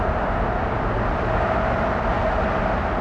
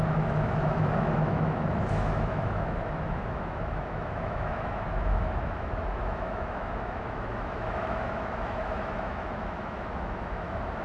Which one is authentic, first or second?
first